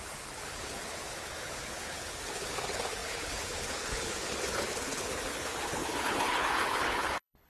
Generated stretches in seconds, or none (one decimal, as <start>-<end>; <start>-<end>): 0.0-7.5